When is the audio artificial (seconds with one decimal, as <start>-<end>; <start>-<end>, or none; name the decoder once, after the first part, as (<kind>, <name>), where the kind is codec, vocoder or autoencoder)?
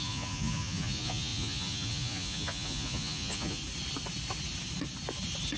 0.0-3.6 (vocoder, Vocos)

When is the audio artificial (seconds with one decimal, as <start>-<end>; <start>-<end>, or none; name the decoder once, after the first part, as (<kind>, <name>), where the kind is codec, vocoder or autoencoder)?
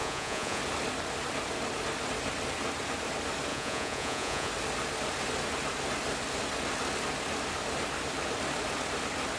0.0-0.6 (vocoder, Vocos); 3.5-4.5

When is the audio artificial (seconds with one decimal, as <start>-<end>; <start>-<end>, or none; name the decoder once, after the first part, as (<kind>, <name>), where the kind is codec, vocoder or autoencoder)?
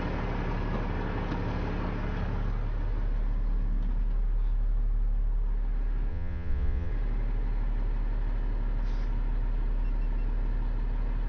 6.1-6.9 (vocoder, Vocos)